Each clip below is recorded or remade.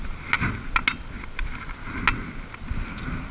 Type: recorded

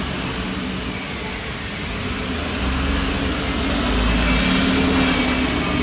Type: recorded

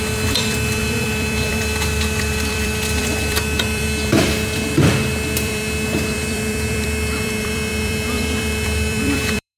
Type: remade